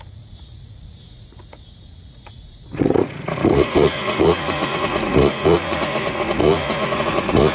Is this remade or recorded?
remade